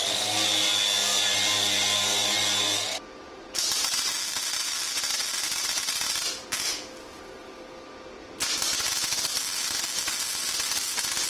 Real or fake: real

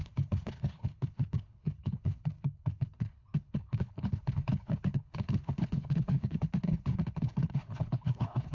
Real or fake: fake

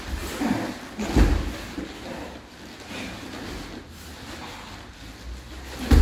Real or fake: real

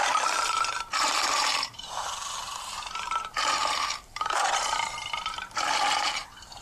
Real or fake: fake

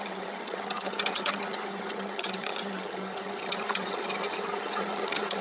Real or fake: fake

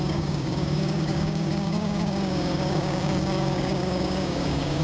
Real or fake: fake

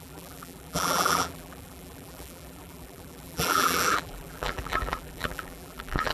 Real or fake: fake